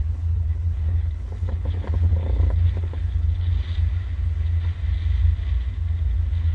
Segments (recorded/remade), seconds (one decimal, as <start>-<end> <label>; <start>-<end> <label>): 0.0-3.5 remade; 3.5-6.5 recorded